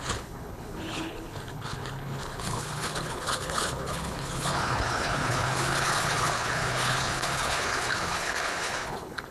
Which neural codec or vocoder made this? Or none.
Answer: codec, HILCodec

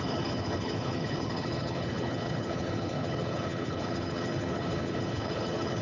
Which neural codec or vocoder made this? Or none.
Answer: codec, HILCodec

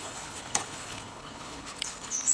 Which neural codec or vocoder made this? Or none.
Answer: codec, HILCodec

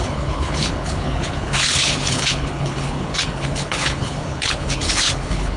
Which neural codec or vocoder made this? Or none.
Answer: codec, HILCodec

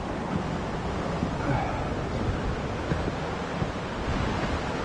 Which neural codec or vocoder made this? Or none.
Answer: none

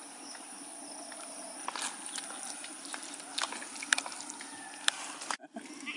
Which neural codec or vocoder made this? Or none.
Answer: none